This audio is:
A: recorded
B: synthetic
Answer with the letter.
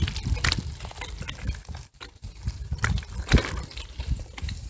A